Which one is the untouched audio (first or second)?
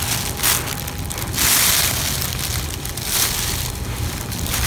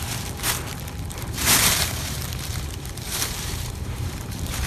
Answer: first